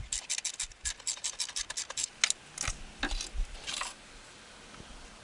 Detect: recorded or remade recorded